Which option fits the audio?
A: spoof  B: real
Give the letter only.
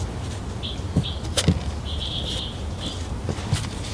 B